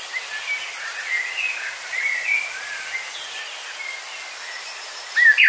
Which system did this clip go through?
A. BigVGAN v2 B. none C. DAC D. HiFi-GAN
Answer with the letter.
B